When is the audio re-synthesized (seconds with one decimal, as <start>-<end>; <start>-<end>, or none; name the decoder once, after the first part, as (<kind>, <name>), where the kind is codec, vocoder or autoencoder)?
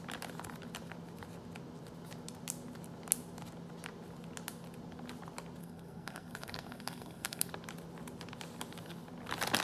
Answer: 5.6-7.5 (codec, SNAC)